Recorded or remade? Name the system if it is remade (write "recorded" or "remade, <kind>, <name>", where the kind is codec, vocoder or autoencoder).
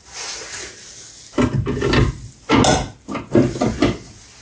recorded